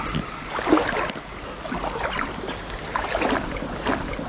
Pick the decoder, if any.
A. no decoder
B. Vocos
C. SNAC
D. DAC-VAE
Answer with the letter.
A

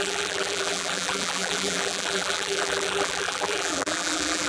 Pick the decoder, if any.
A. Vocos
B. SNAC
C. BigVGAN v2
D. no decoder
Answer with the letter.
C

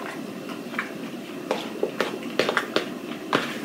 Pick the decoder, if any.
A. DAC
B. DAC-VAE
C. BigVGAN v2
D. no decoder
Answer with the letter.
D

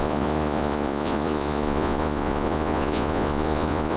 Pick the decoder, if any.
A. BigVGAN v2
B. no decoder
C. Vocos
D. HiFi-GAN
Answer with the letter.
C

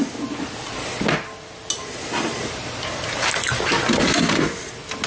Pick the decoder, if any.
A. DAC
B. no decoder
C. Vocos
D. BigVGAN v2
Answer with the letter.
B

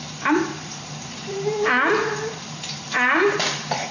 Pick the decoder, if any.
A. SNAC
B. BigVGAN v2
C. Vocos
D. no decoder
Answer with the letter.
B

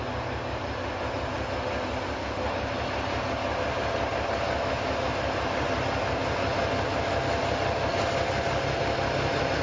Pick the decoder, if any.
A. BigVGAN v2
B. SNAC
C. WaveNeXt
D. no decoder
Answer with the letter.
D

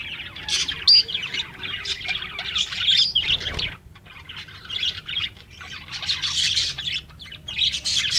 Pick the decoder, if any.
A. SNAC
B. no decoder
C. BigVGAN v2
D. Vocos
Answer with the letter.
B